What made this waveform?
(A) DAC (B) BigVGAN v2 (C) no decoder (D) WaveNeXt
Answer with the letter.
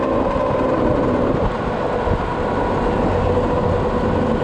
C